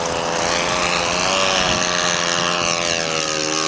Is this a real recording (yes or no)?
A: yes